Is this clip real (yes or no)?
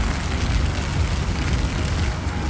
yes